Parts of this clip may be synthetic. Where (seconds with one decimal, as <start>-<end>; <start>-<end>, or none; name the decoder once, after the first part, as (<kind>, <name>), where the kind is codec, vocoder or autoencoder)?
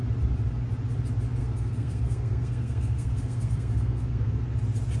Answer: 1.4-4.4 (codec, SNAC)